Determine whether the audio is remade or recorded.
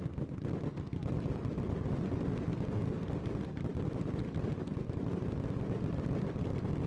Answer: recorded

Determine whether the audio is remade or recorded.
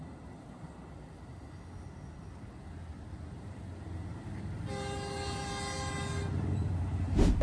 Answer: recorded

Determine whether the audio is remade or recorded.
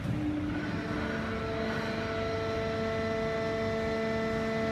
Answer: recorded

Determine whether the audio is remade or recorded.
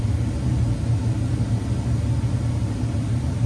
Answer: recorded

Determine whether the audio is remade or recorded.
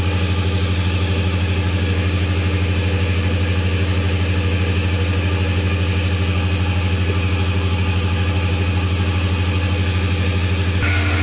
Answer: recorded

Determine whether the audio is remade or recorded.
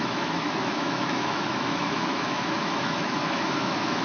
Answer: remade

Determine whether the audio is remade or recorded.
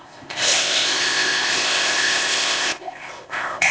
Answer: remade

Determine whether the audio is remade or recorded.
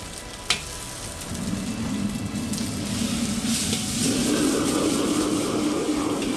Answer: recorded